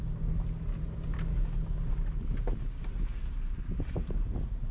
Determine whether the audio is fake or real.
real